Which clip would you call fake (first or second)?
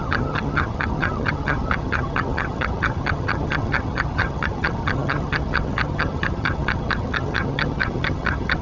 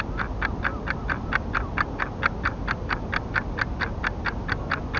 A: first